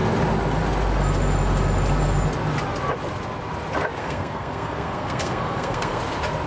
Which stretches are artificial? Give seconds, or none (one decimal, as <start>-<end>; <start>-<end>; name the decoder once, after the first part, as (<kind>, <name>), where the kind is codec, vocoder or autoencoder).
4.0-6.0 (codec, SNAC)